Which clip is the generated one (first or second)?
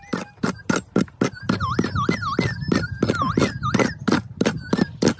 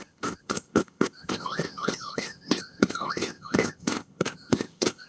second